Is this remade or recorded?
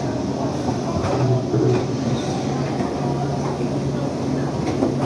recorded